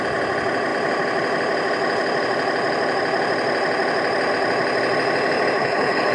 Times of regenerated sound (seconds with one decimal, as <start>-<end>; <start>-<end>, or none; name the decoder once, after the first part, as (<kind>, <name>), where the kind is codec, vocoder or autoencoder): 5.6-6.1 (codec, HILCodec)